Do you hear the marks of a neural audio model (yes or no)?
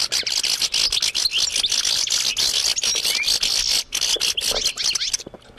no